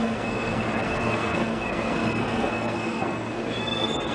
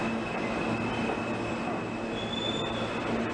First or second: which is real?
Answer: second